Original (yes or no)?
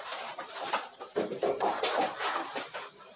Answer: no